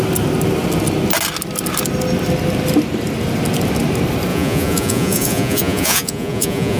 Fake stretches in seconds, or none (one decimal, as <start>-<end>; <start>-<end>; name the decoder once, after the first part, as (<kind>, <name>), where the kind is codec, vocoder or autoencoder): 4.3-6.8 (vocoder, Vocos)